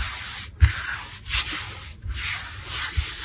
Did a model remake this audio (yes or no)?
no